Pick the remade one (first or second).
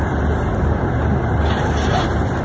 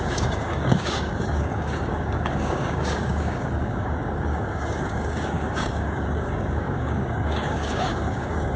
second